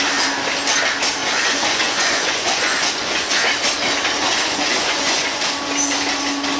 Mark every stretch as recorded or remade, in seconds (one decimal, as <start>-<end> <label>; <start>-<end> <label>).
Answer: 0.0-1.2 recorded; 1.2-3.4 remade; 3.4-4.2 recorded; 4.2-5.4 remade; 5.4-6.6 recorded

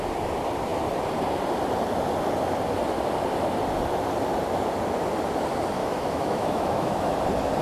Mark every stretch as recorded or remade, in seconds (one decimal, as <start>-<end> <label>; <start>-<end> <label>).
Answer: 0.0-5.8 recorded; 5.8-7.1 remade; 7.1-7.6 recorded